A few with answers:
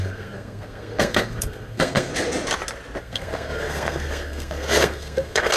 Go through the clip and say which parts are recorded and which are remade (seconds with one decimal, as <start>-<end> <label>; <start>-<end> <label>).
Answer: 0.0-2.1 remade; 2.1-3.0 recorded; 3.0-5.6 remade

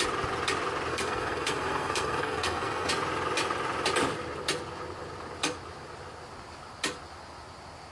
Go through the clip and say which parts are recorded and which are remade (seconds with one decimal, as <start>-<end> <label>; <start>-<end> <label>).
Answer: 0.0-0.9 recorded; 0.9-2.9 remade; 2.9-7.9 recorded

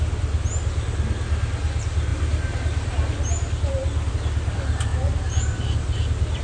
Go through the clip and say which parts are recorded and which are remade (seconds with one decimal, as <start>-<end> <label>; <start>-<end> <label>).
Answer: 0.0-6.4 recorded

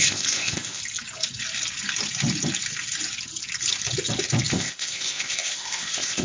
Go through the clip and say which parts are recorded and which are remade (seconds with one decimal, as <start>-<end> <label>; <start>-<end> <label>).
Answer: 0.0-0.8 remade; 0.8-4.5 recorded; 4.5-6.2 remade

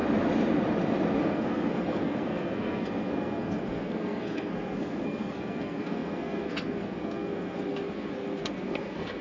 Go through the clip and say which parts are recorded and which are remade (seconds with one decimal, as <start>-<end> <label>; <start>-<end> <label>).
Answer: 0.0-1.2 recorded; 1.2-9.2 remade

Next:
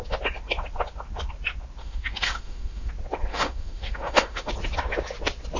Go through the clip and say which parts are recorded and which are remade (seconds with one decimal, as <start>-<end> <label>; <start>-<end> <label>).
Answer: 0.0-1.8 recorded; 1.8-2.9 remade; 2.9-3.3 recorded; 3.3-4.5 remade; 4.5-5.6 recorded

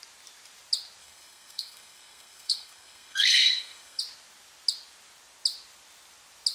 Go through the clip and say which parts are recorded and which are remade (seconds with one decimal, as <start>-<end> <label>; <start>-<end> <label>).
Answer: 0.0-1.0 recorded; 1.0-4.0 remade; 4.0-6.5 recorded